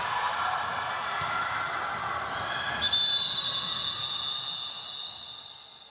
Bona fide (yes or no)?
yes